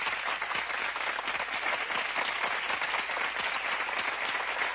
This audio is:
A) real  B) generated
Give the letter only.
A